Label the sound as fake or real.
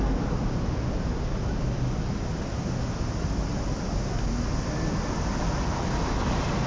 real